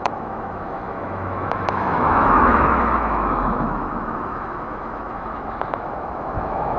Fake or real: fake